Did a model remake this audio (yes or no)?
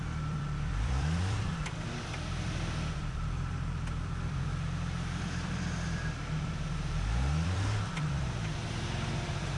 yes